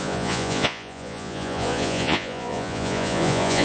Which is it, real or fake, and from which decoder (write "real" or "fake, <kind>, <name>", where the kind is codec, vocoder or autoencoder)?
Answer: fake, vocoder, Vocos